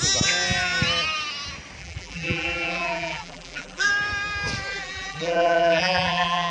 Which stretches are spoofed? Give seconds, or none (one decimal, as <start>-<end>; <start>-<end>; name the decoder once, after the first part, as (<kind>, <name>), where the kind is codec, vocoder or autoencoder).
1.8-3.9 (vocoder, BigVGAN v2); 4.7-6.5